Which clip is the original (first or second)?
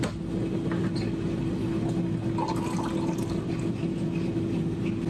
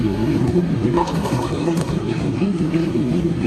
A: first